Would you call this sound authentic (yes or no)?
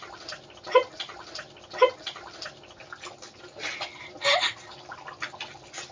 yes